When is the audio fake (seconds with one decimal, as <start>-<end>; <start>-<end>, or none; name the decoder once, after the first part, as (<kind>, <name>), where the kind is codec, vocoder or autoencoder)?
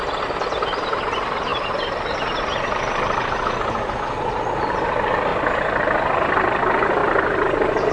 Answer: 0.0-1.5 (vocoder, BigVGAN v2); 4.6-5.3; 6.2-7.0